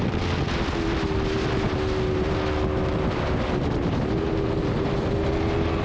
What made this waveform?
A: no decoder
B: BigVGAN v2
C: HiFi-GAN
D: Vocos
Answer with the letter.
A